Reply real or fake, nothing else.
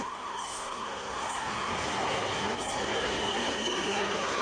fake